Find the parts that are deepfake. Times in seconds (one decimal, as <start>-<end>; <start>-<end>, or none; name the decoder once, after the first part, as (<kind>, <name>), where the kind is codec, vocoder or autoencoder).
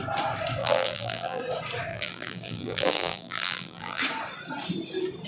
0.6-1.4 (vocoder, BigVGAN v2); 1.9-4.0